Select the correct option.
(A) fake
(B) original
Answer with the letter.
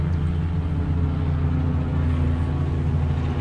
B